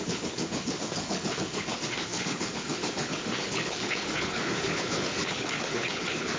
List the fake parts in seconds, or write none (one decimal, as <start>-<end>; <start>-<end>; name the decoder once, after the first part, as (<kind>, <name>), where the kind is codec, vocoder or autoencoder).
0.0-6.4 (codec, HILCodec)